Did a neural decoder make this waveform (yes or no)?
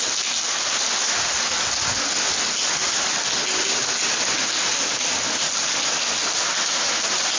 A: no